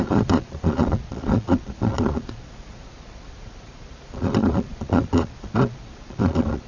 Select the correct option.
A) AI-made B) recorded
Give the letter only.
A